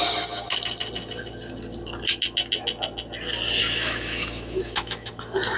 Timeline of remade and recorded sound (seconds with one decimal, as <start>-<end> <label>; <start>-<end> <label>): 0.0-3.6 recorded; 3.6-5.1 remade; 5.1-5.6 recorded